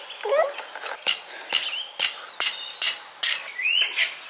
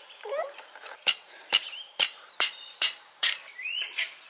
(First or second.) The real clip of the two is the first